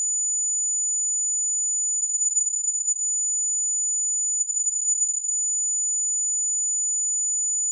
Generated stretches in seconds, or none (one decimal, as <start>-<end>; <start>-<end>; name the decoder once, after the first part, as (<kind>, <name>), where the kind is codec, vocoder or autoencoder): 2.0-3.0 (vocoder, Vocos); 4.4-5.3